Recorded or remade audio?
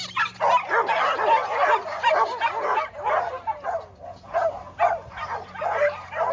recorded